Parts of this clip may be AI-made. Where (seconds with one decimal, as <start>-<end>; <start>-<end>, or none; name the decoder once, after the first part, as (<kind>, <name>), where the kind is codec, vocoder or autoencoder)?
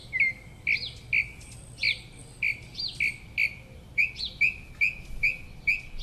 none